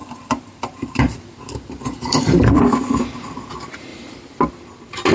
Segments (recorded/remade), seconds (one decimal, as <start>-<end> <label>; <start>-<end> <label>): 0.0-2.6 remade; 2.6-3.9 recorded; 3.9-4.5 remade; 4.5-5.1 recorded